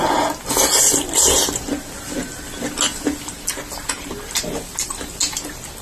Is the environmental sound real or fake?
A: real